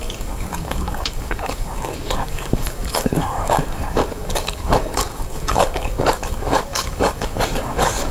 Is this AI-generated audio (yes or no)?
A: yes